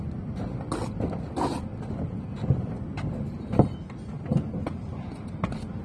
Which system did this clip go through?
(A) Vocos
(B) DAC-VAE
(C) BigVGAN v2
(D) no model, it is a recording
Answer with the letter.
D